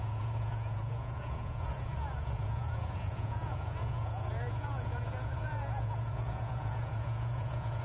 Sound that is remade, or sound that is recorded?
remade